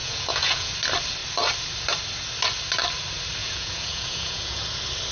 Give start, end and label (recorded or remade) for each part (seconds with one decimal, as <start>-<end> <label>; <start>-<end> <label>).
0.0-0.7 remade; 0.7-3.4 recorded; 3.4-4.6 remade; 4.6-5.1 recorded